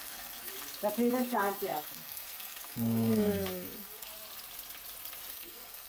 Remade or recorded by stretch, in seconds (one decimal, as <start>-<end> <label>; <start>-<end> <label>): 0.0-0.5 remade; 0.5-1.1 recorded; 1.1-4.1 remade; 4.1-5.3 recorded; 5.3-5.9 remade